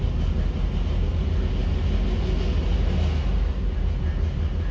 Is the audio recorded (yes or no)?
yes